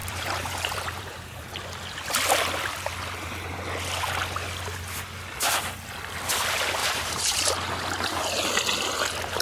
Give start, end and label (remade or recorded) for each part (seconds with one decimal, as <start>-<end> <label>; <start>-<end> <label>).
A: 0.0-1.5 remade; 1.5-6.8 recorded; 6.8-7.5 remade; 7.5-9.4 recorded